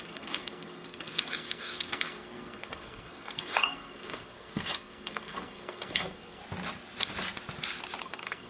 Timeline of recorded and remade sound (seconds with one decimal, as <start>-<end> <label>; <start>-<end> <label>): 0.0-6.4 remade; 6.4-8.0 recorded; 8.0-8.5 remade